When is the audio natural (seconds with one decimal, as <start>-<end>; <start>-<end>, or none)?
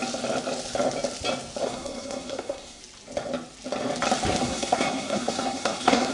0.0-1.6; 2.8-4.4